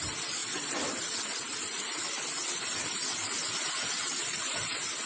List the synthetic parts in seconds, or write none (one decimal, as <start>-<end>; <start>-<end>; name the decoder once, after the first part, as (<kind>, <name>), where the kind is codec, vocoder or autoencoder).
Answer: none